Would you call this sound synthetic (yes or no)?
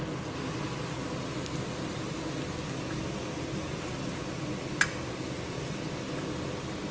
no